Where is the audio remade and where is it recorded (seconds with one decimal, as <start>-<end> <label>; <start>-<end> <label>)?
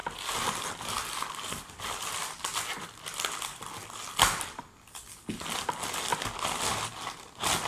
0.0-4.6 remade; 4.6-7.7 recorded